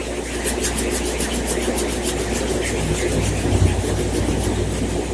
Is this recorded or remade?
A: recorded